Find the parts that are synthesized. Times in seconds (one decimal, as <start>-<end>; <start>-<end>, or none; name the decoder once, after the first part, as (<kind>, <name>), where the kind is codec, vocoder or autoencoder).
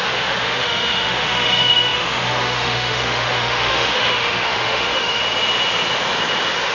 0.0-5.2 (autoencoder, DAC-VAE)